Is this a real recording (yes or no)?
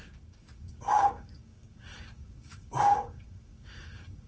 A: no